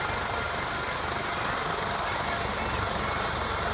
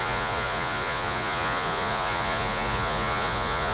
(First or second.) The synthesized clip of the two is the second